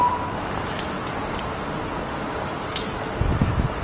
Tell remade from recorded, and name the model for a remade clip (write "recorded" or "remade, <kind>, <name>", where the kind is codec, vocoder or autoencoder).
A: recorded